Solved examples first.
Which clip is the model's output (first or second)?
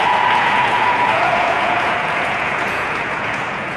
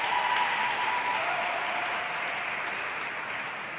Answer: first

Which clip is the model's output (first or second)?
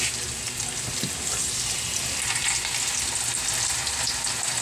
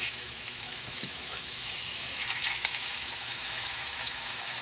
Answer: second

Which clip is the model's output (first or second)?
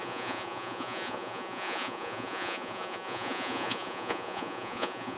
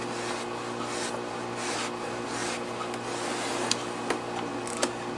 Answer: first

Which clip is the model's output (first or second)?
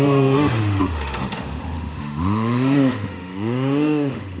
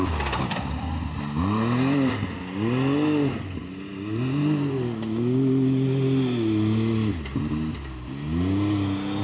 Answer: first